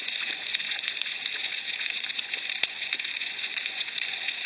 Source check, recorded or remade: remade